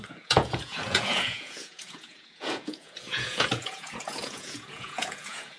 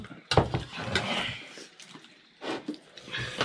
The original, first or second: second